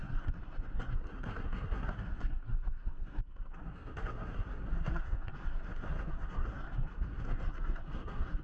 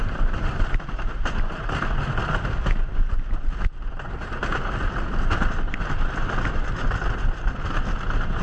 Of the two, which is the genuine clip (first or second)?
second